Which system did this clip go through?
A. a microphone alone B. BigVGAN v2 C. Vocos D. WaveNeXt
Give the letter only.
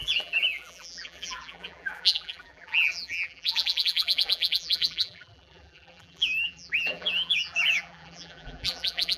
B